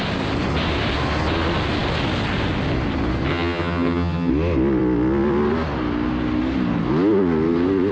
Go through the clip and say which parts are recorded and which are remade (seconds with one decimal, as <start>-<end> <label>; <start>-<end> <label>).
0.0-3.3 recorded; 3.3-4.3 remade; 4.3-7.9 recorded